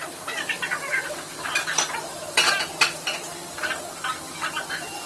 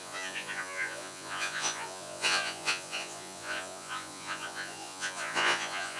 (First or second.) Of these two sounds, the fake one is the second